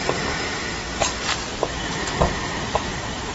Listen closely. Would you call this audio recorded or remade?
recorded